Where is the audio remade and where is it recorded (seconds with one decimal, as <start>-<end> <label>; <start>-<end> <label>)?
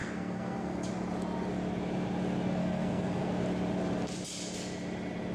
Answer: 0.0-0.9 remade; 0.9-2.6 recorded; 2.6-3.3 remade; 3.3-5.3 recorded